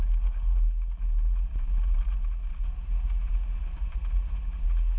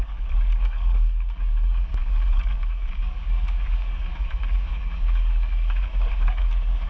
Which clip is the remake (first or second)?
second